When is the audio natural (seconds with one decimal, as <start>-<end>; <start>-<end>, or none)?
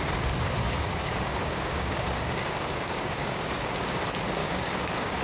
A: 0.0-0.9; 4.0-4.4